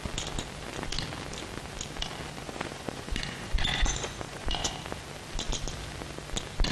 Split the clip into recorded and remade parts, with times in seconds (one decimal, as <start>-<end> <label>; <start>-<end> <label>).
0.0-2.4 recorded; 2.4-4.7 remade; 4.7-6.7 recorded